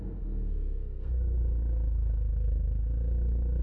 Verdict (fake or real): fake